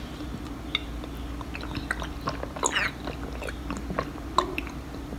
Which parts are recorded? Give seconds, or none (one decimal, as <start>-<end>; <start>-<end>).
0.0-5.2